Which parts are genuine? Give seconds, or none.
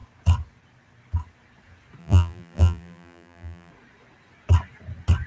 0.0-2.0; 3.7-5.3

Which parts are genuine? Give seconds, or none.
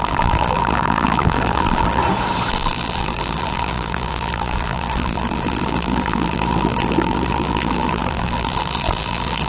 2.0-2.5